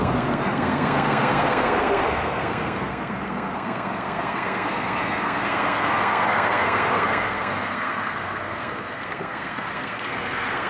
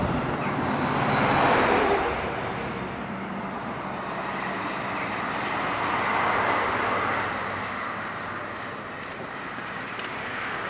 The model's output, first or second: first